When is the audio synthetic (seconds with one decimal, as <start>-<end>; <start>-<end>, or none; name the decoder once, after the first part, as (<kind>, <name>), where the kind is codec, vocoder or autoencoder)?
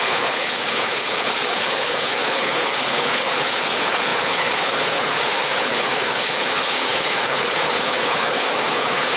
0.0-9.2 (codec, HILCodec)